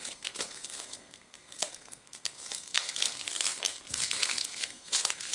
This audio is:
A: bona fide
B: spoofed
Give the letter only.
B